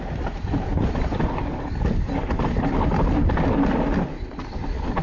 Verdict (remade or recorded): recorded